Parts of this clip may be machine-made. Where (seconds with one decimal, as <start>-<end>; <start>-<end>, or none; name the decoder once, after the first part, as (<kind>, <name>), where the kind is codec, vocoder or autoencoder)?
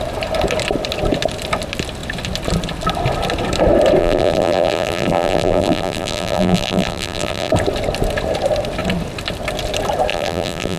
4.0-7.5 (vocoder, BigVGAN v2); 10.1-10.8